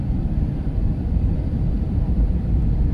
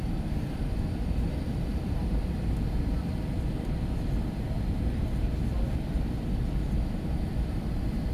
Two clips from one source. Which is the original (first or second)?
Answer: second